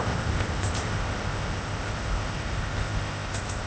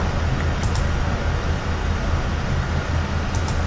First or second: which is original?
second